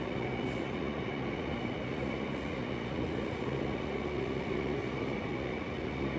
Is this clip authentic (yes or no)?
no